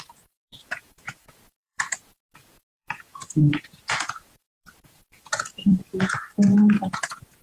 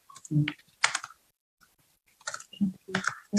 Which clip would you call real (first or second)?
second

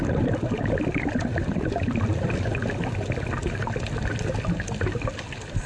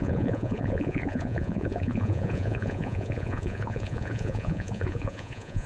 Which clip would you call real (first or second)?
first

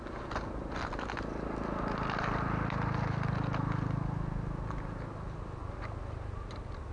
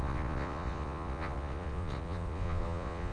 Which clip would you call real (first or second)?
first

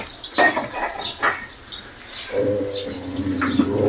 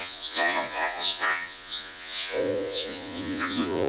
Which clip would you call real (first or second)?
first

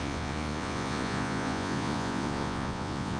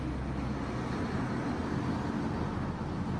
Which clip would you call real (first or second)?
second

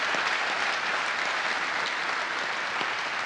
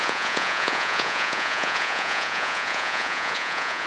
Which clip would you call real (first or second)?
first